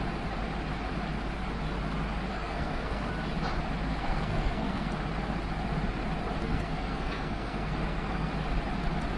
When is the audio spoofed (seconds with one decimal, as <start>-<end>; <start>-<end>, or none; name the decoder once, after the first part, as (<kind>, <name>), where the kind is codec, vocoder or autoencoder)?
2.3-3.1 (codec, SNAC); 3.9-4.9; 6.4-8.3